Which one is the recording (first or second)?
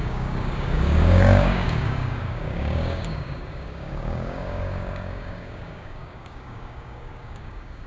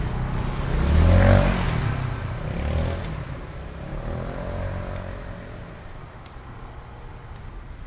second